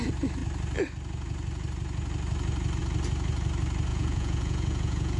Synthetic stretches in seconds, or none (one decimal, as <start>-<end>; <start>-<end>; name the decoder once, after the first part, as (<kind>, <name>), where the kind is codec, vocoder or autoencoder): 3.9-5.2 (vocoder, Vocos)

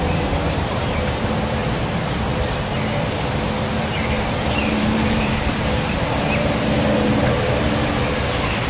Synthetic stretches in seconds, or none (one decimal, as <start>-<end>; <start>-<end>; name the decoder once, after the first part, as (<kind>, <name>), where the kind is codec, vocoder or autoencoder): 0.0-1.6 (vocoder, BigVGAN v2); 3.2-8.7

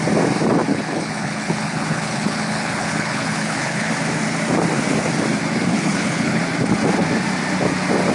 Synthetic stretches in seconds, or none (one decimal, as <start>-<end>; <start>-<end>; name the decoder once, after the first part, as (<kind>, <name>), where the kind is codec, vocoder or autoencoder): 0.7-3.9 (codec, HILCodec); 5.7-6.4

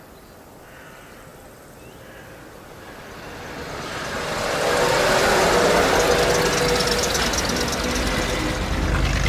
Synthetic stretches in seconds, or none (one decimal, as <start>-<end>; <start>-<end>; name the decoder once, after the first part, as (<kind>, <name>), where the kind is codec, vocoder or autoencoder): none

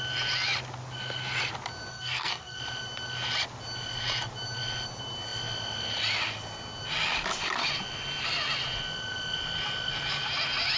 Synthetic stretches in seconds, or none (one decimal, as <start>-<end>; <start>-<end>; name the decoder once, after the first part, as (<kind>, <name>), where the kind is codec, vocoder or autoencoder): 1.9-2.6 (codec, SNAC)

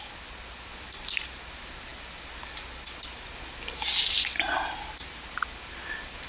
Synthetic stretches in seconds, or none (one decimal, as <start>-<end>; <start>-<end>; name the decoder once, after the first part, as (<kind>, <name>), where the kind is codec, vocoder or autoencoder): none

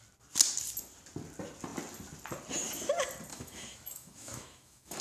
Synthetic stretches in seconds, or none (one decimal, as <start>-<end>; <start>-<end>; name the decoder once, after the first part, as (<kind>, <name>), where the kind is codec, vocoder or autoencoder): 3.3-5.0 (autoencoder, DAC-VAE)

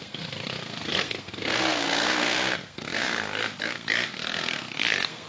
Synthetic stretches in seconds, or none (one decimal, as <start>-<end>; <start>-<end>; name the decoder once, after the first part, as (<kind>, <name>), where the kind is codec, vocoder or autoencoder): 0.0-5.3 (codec, SNAC)